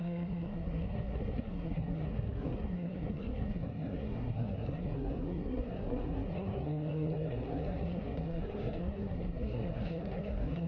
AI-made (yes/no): yes